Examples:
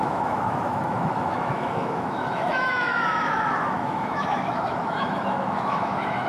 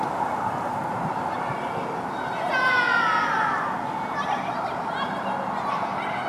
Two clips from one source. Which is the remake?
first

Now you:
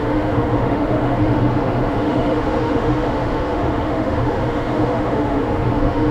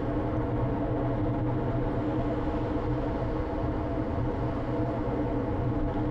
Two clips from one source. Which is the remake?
first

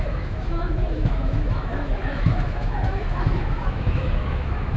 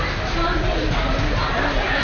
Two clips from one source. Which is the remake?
first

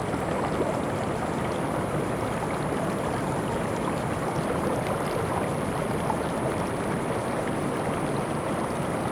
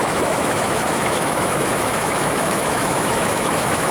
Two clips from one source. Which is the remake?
second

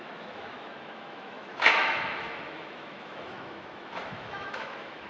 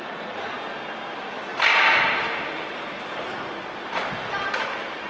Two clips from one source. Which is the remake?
first